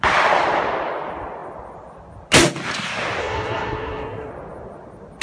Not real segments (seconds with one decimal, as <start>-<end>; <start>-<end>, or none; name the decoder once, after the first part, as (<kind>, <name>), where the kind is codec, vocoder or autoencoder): 3.2-4.3 (codec, SNAC)